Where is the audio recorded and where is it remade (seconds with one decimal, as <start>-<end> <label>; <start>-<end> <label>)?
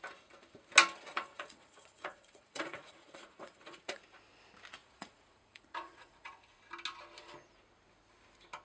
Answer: 0.0-1.1 recorded; 1.1-4.0 remade; 4.0-4.8 recorded; 4.8-6.6 remade; 6.6-8.6 recorded